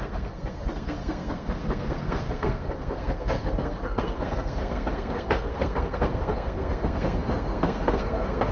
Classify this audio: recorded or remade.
remade